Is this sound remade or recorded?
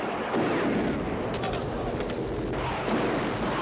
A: recorded